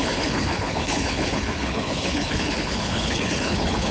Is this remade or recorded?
remade